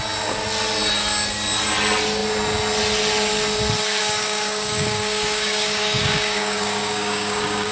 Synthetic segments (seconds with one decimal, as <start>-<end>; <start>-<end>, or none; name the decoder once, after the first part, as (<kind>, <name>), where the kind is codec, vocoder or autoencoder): 4.0-7.7 (codec, DAC)